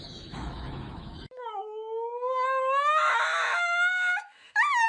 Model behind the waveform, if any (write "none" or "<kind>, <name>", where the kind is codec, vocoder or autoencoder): autoencoder, DAC-VAE